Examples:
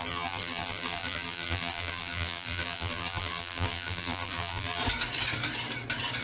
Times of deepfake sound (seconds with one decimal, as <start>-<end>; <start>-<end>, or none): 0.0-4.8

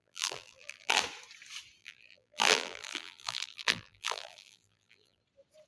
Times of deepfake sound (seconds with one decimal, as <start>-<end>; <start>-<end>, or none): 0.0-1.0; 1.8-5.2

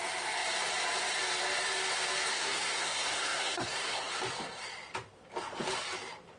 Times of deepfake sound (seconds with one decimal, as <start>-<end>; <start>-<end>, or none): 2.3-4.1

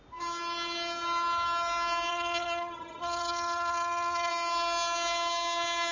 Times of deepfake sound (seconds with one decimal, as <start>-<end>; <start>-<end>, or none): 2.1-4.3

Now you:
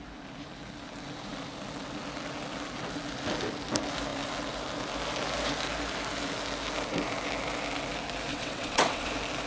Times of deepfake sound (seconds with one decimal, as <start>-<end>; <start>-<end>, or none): 8.3-9.1